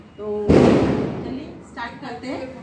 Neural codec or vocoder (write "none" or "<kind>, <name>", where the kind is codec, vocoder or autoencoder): none